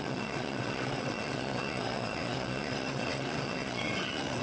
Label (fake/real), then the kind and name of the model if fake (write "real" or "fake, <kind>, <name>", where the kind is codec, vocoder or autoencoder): fake, vocoder, WaveNeXt